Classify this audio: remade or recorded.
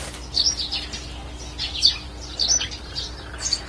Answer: recorded